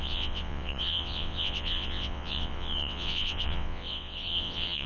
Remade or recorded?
remade